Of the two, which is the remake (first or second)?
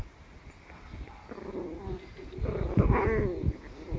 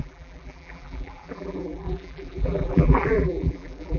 second